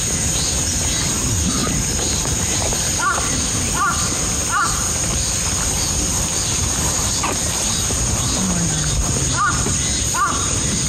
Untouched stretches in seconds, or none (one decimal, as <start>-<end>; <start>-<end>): 0.0-10.9